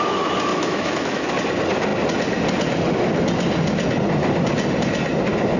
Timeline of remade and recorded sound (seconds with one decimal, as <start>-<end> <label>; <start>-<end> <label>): 0.0-0.5 recorded; 0.5-1.3 remade; 1.3-5.6 recorded